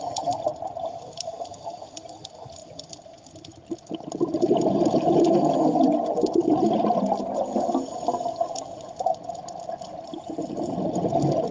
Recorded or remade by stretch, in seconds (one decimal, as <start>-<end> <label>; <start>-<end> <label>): 0.0-11.5 recorded